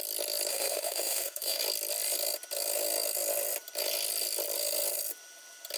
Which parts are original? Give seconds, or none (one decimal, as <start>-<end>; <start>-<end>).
0.0-0.5; 1.6-5.8